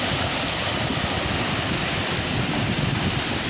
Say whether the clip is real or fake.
fake